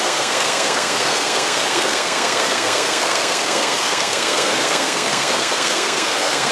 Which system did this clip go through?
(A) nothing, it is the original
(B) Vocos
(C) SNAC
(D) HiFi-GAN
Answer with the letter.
C